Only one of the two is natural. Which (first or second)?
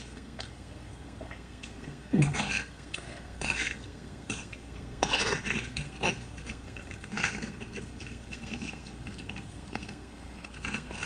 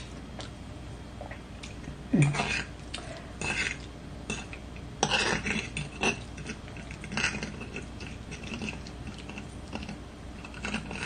second